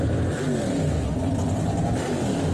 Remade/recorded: recorded